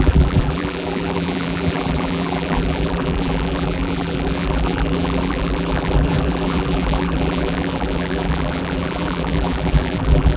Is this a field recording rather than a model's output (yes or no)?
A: no